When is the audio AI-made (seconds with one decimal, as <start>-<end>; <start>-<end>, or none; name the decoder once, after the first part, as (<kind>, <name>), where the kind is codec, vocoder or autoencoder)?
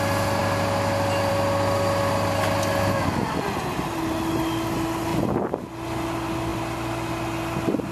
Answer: none